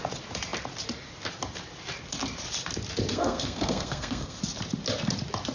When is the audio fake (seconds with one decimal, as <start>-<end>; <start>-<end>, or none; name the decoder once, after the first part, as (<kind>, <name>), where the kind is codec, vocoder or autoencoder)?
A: 3.1-4.4 (codec, SNAC)